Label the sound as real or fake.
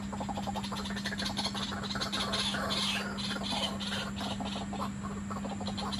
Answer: real